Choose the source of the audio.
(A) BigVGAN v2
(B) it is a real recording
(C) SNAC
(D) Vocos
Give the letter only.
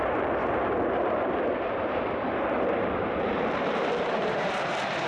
A